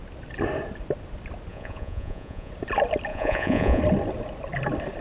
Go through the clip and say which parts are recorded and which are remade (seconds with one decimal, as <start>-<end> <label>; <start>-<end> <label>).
0.0-1.5 recorded; 1.5-2.5 remade; 2.5-3.1 recorded; 3.1-3.8 remade; 3.8-5.0 recorded